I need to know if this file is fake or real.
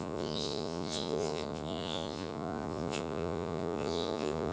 fake